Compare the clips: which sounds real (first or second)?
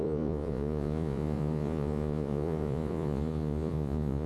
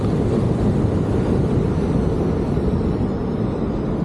second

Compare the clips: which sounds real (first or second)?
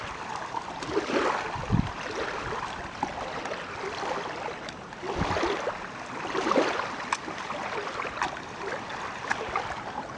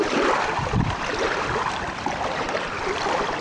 first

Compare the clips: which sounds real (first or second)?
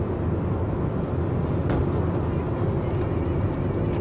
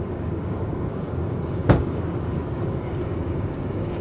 first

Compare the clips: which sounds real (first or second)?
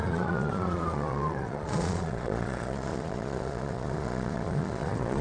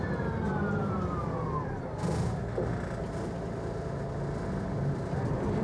second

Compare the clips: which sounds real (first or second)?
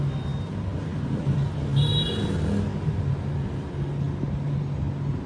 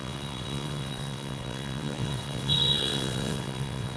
first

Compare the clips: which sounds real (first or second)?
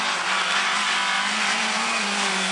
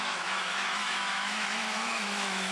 first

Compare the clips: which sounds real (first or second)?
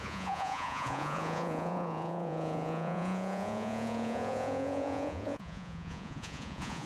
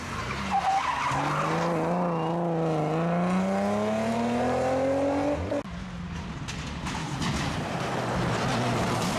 second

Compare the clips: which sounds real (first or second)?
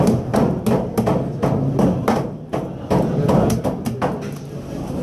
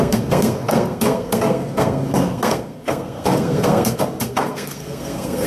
first